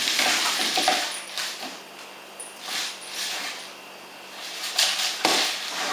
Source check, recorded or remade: remade